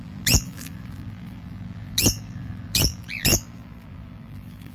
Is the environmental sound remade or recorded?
remade